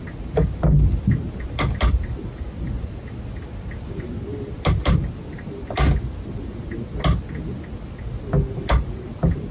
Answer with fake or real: real